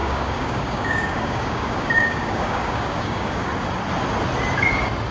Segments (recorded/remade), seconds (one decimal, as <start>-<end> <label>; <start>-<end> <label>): 0.0-3.5 remade; 3.5-5.1 recorded